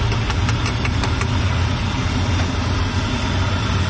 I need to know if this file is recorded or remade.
recorded